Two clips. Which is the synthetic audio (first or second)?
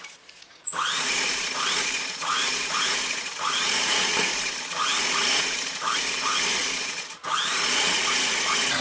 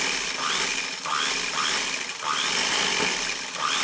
first